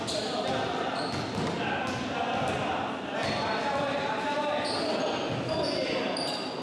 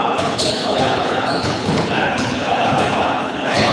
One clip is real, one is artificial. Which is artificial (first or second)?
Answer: second